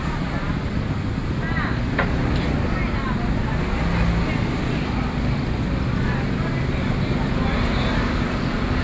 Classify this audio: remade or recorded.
recorded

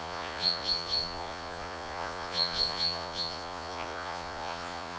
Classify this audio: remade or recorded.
remade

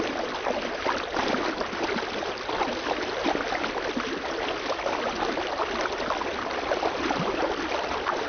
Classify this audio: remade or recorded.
recorded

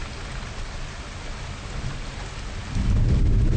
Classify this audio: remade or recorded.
recorded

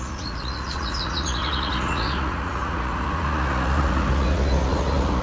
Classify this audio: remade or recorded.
remade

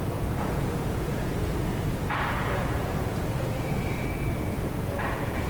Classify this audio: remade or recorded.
remade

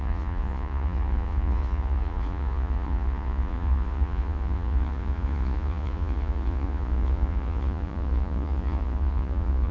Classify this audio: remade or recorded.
remade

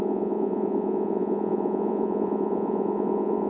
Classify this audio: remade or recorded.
remade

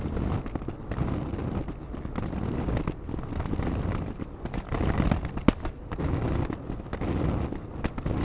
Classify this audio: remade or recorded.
recorded